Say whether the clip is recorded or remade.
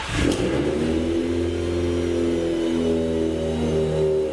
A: recorded